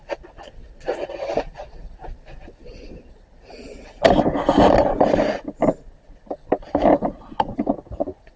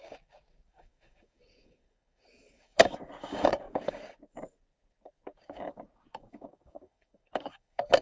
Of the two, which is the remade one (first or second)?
second